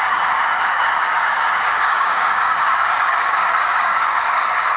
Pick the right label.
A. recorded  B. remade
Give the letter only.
B